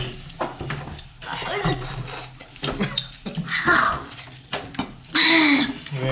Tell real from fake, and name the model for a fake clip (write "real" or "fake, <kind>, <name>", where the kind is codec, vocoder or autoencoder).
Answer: real